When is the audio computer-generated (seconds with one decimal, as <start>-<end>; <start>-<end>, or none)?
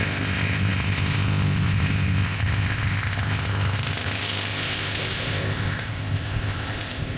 0.0-7.2